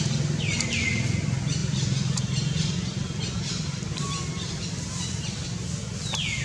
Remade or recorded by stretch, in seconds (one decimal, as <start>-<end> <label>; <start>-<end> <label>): 0.0-6.4 recorded